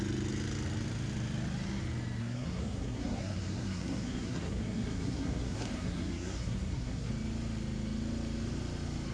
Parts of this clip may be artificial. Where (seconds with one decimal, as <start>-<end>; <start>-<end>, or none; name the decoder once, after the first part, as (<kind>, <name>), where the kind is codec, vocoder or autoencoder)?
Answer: 2.2-7.1 (codec, SNAC)